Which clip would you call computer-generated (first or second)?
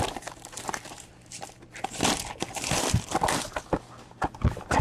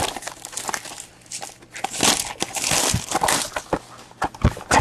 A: first